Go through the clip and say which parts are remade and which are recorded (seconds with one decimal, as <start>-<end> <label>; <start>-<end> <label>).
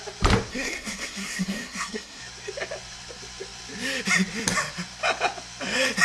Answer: 0.0-0.5 recorded; 0.5-2.2 remade; 2.2-6.0 recorded